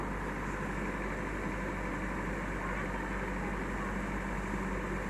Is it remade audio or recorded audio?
recorded